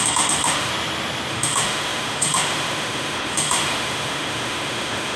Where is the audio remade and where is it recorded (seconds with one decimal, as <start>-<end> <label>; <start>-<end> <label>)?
0.0-0.7 remade; 0.7-1.3 recorded; 1.3-5.2 remade